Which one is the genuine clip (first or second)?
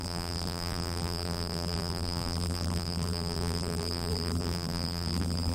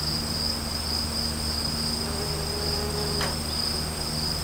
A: second